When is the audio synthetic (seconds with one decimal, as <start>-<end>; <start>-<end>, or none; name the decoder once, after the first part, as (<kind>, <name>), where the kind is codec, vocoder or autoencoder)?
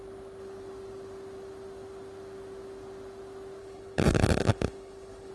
3.6-5.3 (codec, HILCodec)